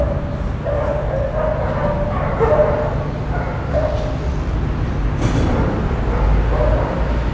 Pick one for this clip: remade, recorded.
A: recorded